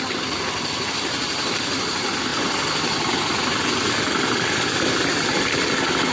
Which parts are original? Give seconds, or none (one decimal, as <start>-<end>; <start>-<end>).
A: 0.0-6.1